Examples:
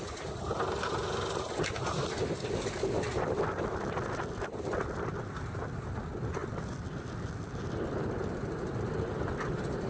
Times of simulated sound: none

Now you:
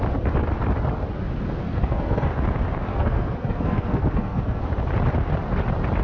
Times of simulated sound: 1.6-2.3 (codec, SNAC); 2.9-4.6

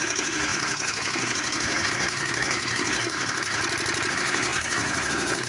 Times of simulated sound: 0.0-3.6 (codec, SNAC); 4.1-5.5

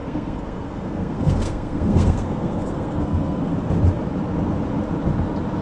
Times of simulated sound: 0.0-3.5 (codec, SNAC)

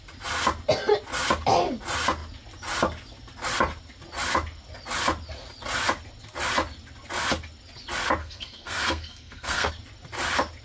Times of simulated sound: 8.2-9.7 (codec, SNAC)

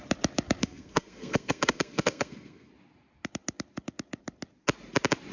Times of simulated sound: 0.6-2.7 (codec, SNAC)

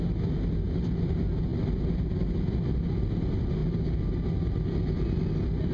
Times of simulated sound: none

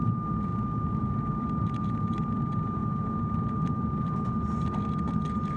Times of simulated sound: none